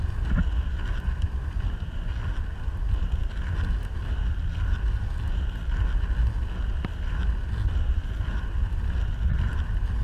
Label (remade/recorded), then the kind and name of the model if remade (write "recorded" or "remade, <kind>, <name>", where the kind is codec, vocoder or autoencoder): recorded